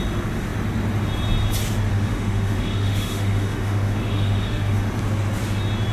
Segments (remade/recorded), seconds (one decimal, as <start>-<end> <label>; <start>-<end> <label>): 0.0-1.9 recorded; 1.9-4.9 remade; 4.9-5.9 recorded